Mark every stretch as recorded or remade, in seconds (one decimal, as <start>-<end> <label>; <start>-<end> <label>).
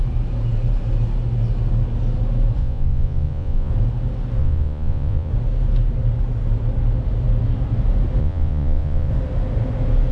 0.0-2.6 recorded; 2.6-3.7 remade; 3.7-4.4 recorded; 4.4-5.3 remade; 5.3-8.2 recorded; 8.2-9.1 remade; 9.1-10.1 recorded